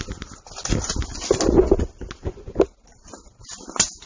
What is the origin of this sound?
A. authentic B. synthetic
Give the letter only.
A